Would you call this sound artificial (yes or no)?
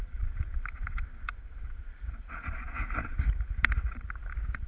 yes